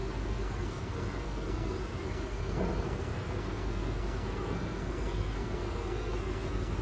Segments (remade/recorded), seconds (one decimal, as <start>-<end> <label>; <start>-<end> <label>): 0.0-6.8 remade